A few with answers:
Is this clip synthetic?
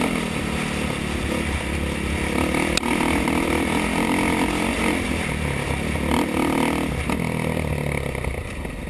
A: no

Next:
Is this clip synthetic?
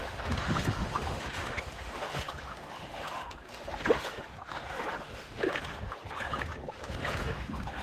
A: yes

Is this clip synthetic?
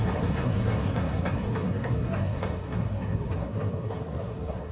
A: yes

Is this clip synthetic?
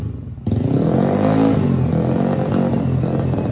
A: no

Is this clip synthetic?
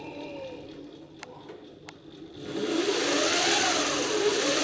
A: no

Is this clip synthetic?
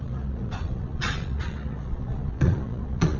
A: yes